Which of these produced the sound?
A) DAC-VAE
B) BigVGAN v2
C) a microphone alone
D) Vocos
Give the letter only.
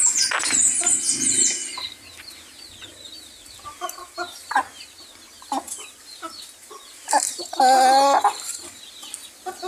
C